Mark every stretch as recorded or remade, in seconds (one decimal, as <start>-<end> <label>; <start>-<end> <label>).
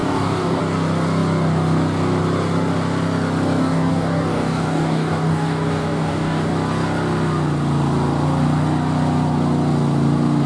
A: 0.0-0.6 remade; 0.6-3.6 recorded; 3.6-6.5 remade; 6.5-10.5 recorded